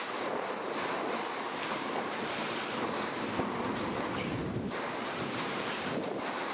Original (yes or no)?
no